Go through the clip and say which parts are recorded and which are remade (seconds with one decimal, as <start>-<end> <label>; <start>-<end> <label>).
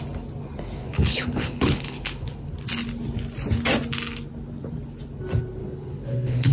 0.0-0.8 recorded; 0.8-2.5 remade; 2.5-5.6 recorded; 5.6-6.5 remade